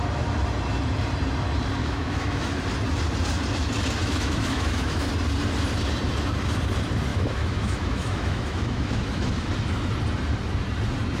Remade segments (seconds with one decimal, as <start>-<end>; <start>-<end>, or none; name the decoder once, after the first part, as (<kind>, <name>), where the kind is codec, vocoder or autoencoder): 1.8-2.6 (autoencoder, DAC-VAE); 4.0-5.1; 7.1-9.5